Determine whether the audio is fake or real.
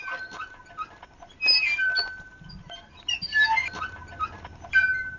real